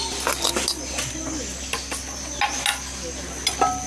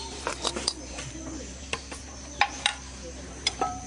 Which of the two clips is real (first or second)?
first